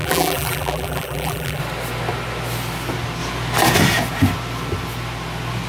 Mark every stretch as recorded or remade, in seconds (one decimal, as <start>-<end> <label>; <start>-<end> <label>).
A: 0.0-1.6 remade; 1.6-5.7 recorded